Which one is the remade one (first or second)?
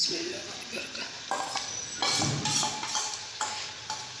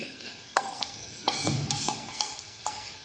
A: second